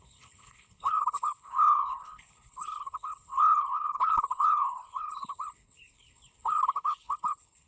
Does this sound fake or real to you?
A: fake